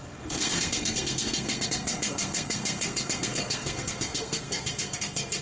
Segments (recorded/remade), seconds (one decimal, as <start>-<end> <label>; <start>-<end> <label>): 0.0-5.4 remade